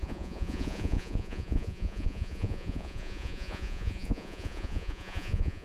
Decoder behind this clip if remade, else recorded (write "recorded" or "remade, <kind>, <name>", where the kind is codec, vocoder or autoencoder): remade, vocoder, Vocos